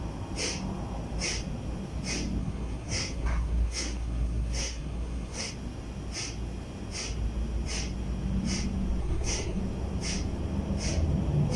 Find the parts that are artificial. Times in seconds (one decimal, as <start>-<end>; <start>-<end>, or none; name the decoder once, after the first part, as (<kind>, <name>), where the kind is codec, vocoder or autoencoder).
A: 2.4-5.5 (codec, SNAC); 9.0-9.6